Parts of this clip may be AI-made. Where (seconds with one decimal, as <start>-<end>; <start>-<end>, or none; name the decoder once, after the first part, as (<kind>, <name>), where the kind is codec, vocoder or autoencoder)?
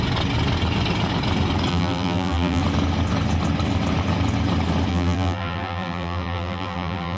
1.7-2.6 (vocoder, BigVGAN v2); 4.9-7.2